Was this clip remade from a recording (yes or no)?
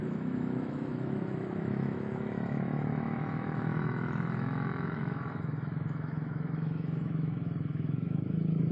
yes